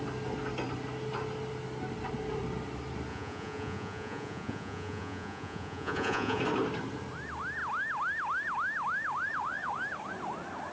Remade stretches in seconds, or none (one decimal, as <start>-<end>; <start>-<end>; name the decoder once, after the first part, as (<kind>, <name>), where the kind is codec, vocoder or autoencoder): 3.1-6.4 (vocoder, Vocos)